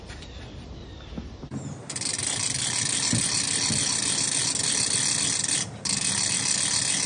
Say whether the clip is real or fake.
real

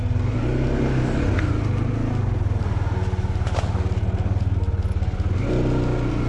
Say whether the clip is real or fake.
real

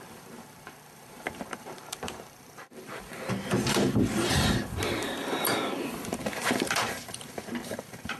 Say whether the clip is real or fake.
fake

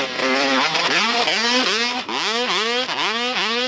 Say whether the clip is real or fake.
real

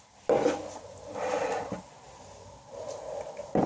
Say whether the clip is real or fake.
real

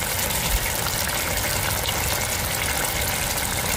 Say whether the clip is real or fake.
real